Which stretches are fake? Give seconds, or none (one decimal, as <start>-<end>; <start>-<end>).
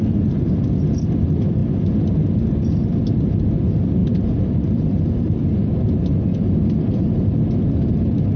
4.0-5.7